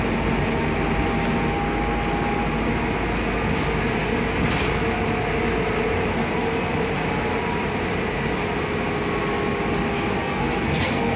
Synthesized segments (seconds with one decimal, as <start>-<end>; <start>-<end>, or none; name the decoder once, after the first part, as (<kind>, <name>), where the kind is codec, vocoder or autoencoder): 10.2-11.2 (codec, SNAC)